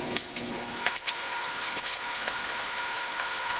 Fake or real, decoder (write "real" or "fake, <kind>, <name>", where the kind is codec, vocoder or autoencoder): fake, codec, HILCodec